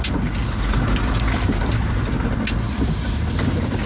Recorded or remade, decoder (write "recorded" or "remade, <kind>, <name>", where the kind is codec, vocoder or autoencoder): recorded